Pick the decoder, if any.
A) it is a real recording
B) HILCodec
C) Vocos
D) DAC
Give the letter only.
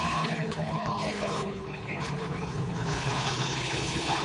B